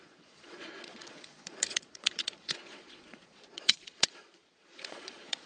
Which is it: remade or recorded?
remade